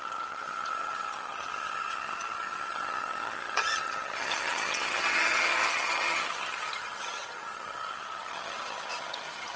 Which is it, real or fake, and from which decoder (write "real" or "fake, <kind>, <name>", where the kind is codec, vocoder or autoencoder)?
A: fake, vocoder, HiFi-GAN